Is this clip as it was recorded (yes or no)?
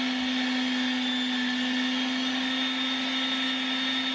yes